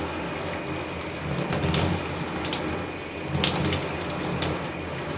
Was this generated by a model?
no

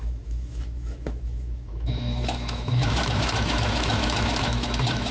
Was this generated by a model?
yes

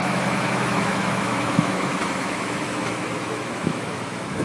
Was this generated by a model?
yes